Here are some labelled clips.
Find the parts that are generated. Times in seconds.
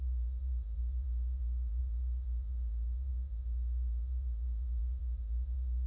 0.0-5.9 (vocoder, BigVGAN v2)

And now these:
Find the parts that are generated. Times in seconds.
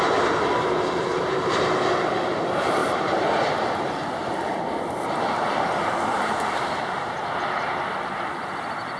1.1-1.6 (vocoder, BigVGAN v2); 2.8-7.3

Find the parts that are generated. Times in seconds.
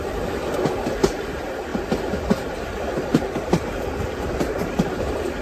0.0-1.7 (vocoder, BigVGAN v2); 2.7-5.4